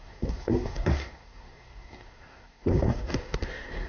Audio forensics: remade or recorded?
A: remade